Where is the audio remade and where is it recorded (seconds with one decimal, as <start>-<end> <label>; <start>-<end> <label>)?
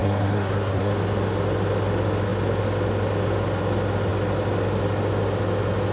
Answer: 0.0-0.9 remade; 0.9-5.9 recorded